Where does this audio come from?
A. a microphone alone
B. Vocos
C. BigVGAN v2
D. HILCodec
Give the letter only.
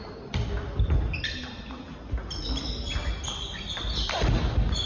A